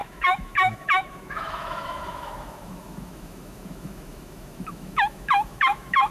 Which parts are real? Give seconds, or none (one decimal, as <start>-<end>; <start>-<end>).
none